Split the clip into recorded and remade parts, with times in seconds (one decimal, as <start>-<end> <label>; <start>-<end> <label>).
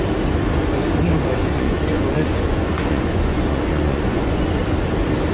0.0-1.4 recorded; 1.4-4.6 remade; 4.6-5.3 recorded